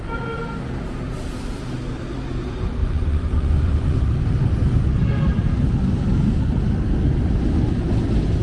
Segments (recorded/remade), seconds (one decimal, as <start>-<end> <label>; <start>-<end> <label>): 0.0-2.8 recorded; 2.8-4.0 remade; 4.0-8.4 recorded